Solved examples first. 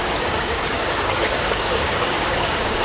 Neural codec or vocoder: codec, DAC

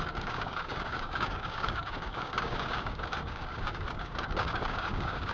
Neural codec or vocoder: codec, DAC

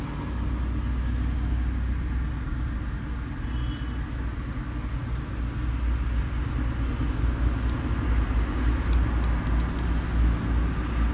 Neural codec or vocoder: none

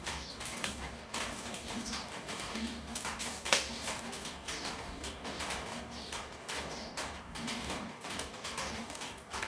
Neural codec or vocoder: codec, DAC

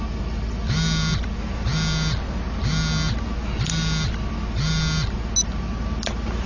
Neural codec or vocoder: none